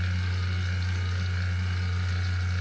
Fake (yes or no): no